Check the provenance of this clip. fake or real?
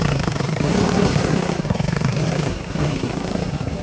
fake